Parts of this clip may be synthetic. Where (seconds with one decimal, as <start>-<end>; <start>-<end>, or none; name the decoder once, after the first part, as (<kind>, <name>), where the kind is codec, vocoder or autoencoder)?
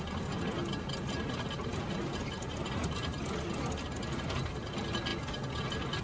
none